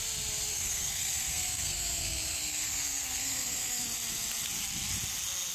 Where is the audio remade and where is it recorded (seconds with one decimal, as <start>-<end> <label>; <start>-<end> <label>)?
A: 0.0-0.5 recorded; 0.5-3.8 remade; 3.8-5.5 recorded